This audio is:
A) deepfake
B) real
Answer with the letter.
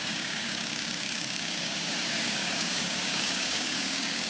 A